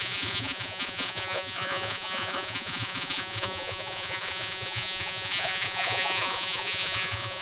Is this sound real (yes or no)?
no